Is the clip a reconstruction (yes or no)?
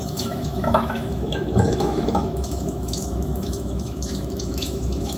yes